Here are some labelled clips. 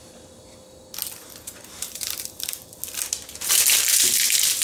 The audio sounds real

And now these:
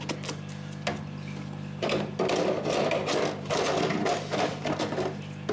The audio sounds real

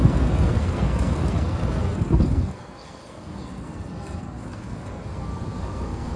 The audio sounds fake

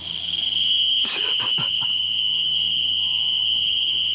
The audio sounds fake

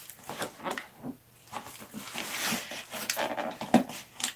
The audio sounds real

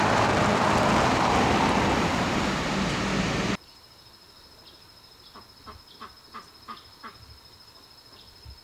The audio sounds real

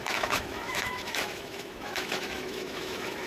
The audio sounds fake